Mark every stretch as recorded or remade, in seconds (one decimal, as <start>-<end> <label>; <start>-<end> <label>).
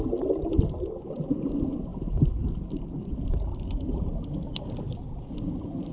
0.0-5.9 recorded